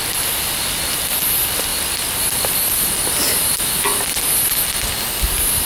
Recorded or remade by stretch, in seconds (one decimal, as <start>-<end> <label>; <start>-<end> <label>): 0.0-5.7 recorded

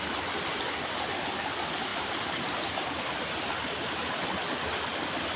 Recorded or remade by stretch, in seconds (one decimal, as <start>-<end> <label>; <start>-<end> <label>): 0.0-1.9 recorded; 1.9-3.9 remade; 3.9-5.4 recorded